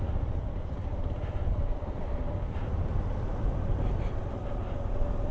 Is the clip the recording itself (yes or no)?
yes